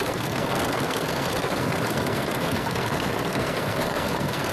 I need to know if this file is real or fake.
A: fake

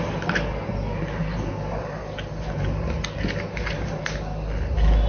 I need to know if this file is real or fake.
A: real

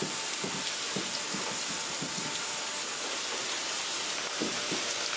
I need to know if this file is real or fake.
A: real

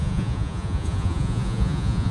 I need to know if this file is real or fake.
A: fake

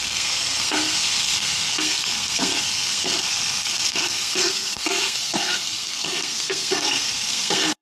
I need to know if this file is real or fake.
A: fake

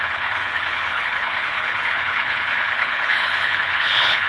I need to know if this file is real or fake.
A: fake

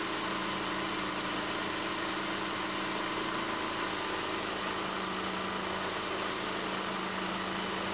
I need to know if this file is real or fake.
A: real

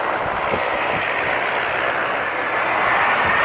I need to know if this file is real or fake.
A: real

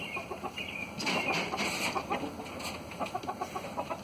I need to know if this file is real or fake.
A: real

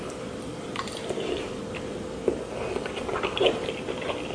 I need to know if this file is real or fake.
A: real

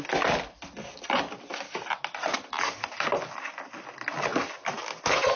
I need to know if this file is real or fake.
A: real